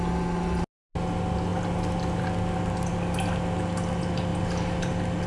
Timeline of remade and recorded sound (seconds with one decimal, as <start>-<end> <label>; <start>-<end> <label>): 0.0-5.3 recorded